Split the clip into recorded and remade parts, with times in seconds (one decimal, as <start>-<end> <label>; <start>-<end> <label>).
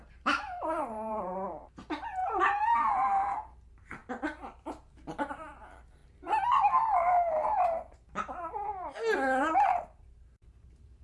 0.0-4.0 remade; 4.0-4.9 recorded; 4.9-6.0 remade; 6.0-9.4 recorded; 9.4-11.0 remade